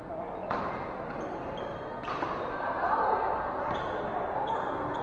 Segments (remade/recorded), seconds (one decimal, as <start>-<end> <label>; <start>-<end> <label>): 0.0-5.0 recorded